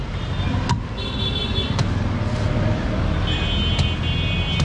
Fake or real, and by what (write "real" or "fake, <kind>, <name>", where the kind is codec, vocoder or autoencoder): real